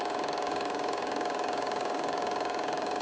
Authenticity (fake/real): fake